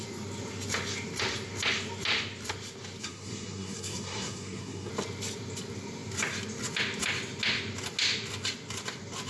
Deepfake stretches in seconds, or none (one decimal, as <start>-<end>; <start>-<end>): 3.0-4.9